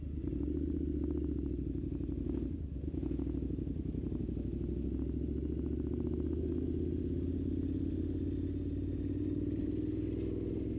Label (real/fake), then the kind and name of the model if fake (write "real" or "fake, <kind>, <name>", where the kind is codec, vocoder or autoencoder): real